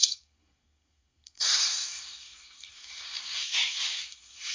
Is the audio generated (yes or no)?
yes